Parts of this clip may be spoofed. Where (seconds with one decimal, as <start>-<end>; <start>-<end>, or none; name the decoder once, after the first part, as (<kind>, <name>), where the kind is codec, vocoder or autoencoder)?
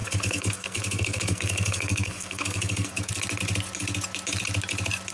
0.0-3.1 (codec, SNAC)